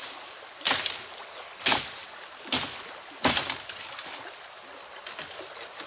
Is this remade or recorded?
recorded